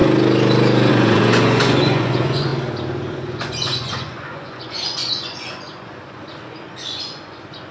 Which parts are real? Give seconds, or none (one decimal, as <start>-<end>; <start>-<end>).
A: 0.0-0.9; 2.5-3.1